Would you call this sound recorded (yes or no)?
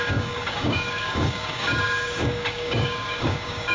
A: no